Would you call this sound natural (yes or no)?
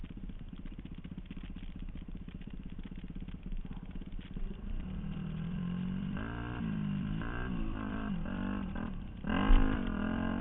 no